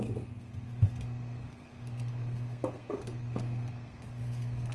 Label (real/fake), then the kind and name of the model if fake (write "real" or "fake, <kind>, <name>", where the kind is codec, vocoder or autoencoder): fake, codec, SNAC